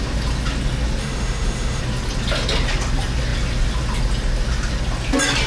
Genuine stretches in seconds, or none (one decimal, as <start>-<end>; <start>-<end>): 0.0-1.0; 1.8-5.5